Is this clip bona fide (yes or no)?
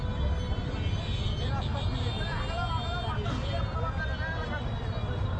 yes